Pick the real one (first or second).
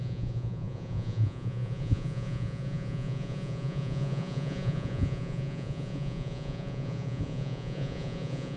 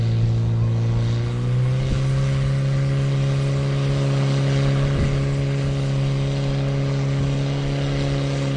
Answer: second